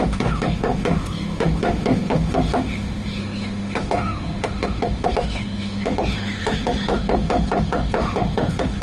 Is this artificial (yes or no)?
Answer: yes